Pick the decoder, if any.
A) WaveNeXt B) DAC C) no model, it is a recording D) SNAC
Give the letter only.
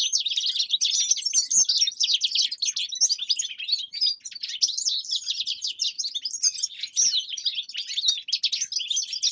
C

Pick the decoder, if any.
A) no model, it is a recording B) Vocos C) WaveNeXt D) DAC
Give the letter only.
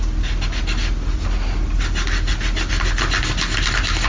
A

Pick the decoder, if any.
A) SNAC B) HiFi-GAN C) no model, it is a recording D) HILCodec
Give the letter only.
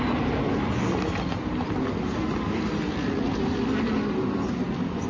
C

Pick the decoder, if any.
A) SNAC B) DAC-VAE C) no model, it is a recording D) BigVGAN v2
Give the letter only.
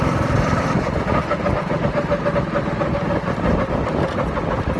C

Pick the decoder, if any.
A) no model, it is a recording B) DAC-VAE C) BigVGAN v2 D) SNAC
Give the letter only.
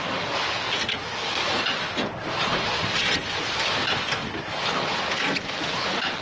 A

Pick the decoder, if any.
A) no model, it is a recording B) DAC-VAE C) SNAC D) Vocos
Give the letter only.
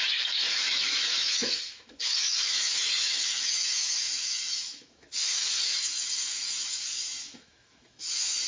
B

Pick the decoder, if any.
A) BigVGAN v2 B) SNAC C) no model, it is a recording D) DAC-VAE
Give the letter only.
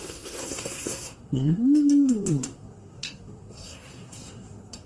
B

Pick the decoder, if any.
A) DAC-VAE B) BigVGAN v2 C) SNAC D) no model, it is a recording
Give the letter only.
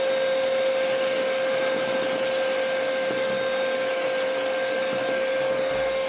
D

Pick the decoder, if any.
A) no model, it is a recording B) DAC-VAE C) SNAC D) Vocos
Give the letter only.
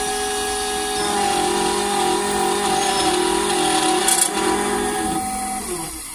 A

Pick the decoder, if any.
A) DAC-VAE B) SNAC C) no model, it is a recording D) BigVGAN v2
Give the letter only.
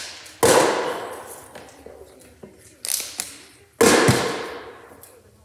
C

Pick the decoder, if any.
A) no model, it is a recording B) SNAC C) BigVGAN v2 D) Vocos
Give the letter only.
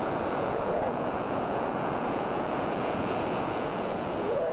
D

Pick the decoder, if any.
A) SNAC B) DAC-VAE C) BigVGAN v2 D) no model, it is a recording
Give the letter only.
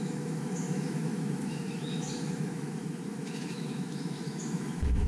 B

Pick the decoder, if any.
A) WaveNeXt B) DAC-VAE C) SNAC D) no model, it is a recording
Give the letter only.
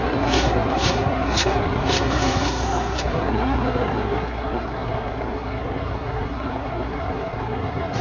C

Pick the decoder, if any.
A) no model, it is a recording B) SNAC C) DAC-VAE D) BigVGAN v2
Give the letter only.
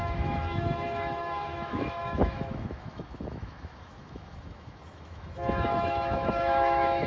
C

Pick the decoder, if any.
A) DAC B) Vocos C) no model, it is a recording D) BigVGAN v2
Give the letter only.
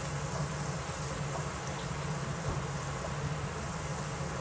C